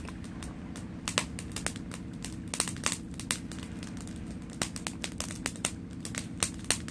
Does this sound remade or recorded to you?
recorded